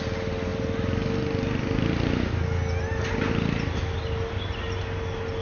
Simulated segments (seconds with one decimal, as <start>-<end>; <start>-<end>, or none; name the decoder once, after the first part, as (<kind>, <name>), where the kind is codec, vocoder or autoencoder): none